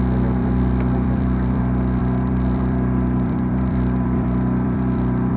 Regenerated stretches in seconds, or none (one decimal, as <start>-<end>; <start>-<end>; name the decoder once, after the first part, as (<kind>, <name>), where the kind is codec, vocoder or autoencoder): 0.4-1.6 (vocoder, BigVGAN v2); 2.0-5.4